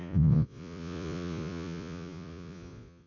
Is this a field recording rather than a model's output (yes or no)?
no